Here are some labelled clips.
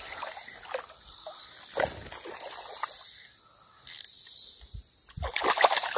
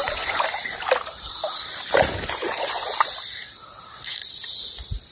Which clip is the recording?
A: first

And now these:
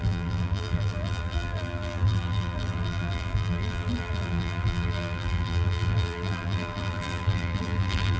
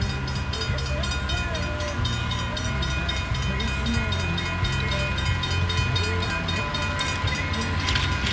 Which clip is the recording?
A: second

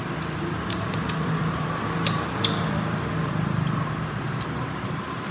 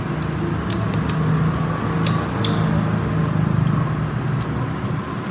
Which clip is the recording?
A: second